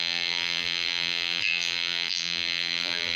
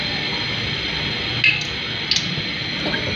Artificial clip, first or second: first